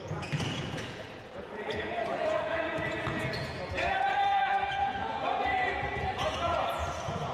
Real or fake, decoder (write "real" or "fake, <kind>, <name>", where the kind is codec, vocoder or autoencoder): fake, vocoder, Vocos